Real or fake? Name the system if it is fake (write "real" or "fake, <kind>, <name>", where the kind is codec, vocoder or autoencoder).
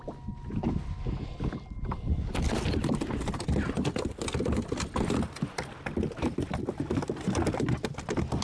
real